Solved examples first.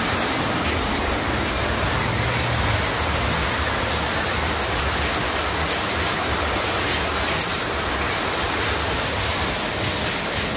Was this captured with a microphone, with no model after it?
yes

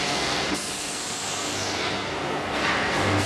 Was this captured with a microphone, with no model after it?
no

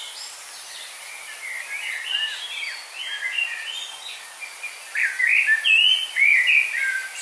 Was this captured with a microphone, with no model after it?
yes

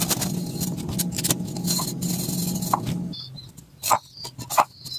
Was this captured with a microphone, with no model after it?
yes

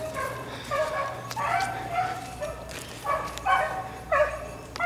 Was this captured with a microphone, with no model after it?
yes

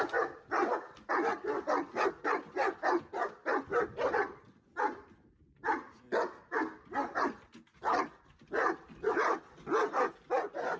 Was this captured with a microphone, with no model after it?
yes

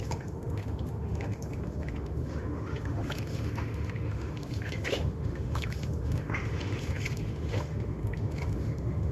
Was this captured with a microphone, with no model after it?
no